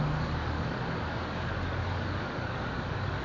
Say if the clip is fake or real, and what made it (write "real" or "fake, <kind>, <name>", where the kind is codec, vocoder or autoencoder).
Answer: fake, codec, DAC